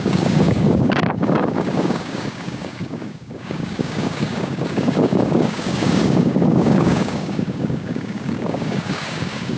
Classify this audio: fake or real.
fake